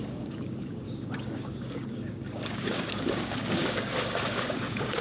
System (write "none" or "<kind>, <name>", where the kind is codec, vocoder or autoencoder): codec, DAC